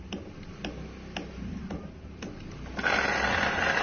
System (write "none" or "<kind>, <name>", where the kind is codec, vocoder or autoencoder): none